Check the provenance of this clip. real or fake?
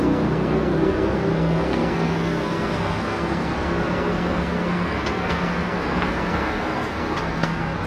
fake